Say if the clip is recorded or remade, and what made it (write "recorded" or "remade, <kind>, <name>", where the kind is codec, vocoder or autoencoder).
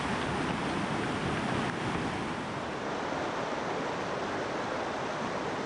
recorded